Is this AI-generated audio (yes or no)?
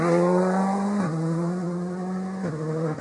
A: no